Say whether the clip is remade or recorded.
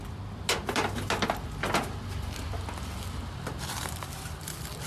recorded